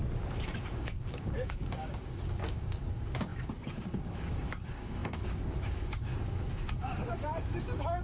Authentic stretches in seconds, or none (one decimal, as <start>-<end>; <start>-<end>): 0.0-0.7